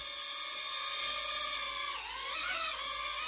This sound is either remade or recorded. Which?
recorded